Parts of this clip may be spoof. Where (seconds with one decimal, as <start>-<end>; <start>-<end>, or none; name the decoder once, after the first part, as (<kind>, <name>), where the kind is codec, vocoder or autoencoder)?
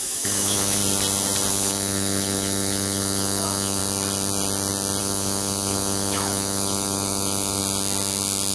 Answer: 0.0-0.8 (autoencoder, DAC-VAE); 1.5-3.8; 5.0-7.6